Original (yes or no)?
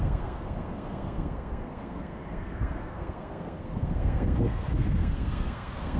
no